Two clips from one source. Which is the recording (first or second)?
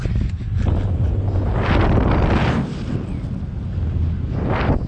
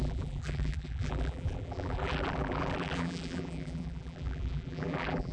first